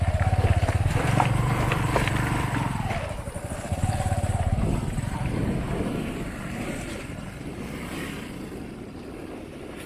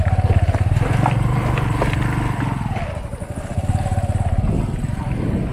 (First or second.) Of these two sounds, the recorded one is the second